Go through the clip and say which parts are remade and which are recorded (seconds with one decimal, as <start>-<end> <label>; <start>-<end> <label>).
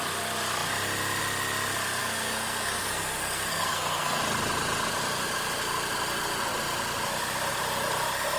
0.0-2.0 recorded; 2.0-4.2 remade; 4.2-8.4 recorded